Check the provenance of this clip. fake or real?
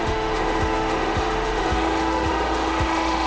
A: fake